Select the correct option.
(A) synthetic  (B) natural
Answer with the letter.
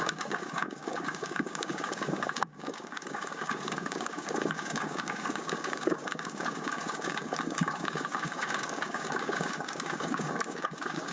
A